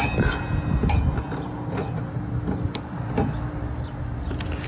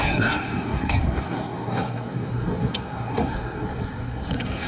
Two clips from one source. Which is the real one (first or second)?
first